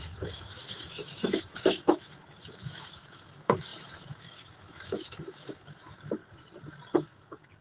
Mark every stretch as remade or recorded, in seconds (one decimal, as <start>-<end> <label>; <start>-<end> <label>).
0.0-6.2 remade; 6.2-6.9 recorded; 6.9-7.6 remade